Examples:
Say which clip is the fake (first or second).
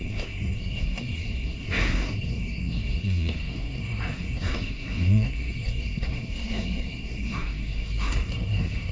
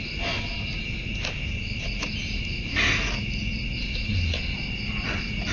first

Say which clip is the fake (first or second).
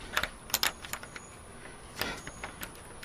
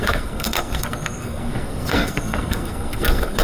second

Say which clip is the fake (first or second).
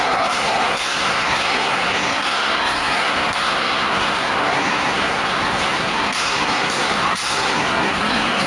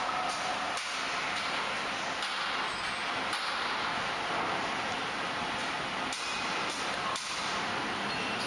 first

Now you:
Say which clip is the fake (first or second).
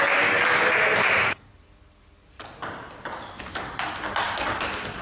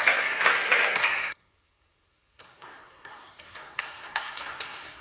second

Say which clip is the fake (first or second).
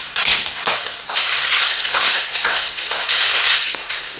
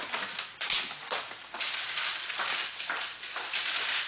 first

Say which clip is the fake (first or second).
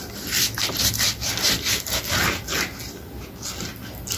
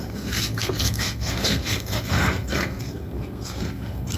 second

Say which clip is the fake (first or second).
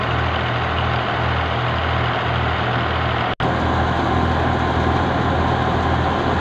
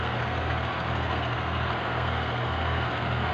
second